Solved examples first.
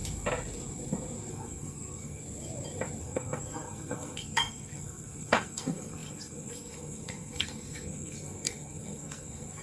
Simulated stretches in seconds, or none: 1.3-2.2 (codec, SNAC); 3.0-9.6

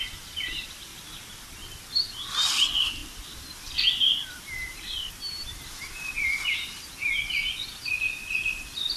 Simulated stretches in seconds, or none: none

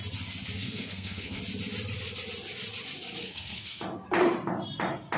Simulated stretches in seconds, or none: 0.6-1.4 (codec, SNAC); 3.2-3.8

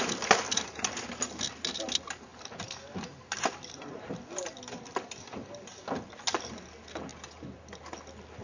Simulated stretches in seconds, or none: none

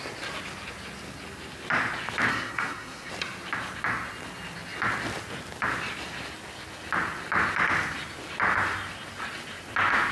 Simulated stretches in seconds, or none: 2.3-3.1 (codec, SNAC)

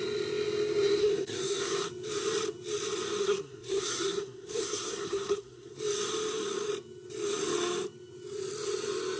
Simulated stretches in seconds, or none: 1.0-1.9 (codec, SNAC); 3.2-5.8

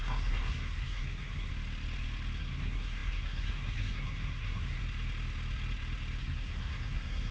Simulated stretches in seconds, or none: 0.0-1.5 (codec, SNAC); 2.4-4.8; 6.2-7.3